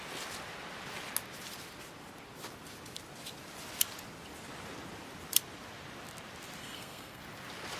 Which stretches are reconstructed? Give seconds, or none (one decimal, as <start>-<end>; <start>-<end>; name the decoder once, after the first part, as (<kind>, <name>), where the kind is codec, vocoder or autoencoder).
6.6-7.2 (codec, SNAC)